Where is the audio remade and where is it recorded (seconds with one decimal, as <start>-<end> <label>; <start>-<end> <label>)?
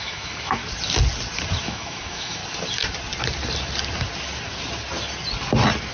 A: 0.0-0.6 remade; 0.6-1.6 recorded; 1.6-2.4 remade; 2.4-5.9 recorded